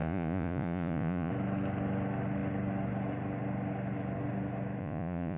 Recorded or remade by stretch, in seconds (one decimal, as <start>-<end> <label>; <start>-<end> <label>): 0.0-1.3 remade; 1.3-4.8 recorded; 4.8-5.4 remade